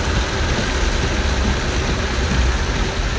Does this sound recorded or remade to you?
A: recorded